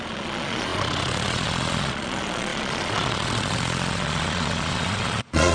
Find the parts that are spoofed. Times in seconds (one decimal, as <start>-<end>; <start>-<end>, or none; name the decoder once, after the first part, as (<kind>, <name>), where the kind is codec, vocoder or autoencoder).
0.0-5.5 (vocoder, Vocos)